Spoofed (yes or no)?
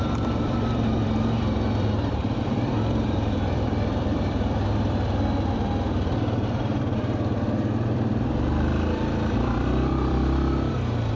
yes